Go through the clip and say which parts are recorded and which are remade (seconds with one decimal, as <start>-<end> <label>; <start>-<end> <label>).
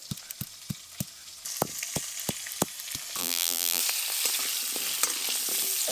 0.0-3.2 recorded; 3.2-3.8 remade; 3.8-5.9 recorded